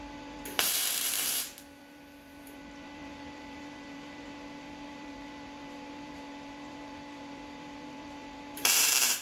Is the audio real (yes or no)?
no